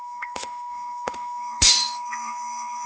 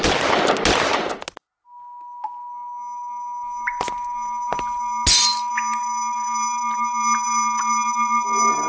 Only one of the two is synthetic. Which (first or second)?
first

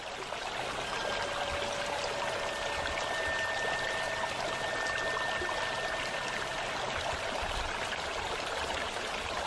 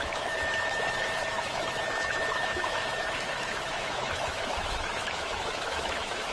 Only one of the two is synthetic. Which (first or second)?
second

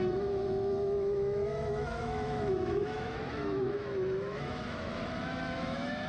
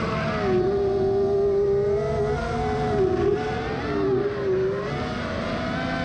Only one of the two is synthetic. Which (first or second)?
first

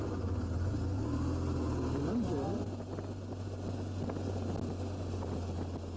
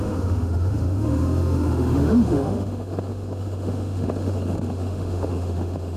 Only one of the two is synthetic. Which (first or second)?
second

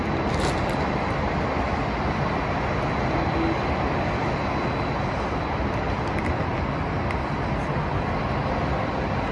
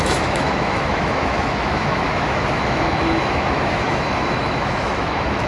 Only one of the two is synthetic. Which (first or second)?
second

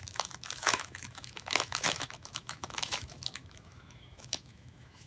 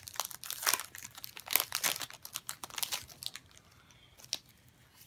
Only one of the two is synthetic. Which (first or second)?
first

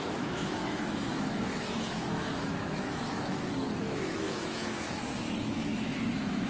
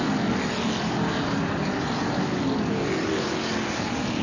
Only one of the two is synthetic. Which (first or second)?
first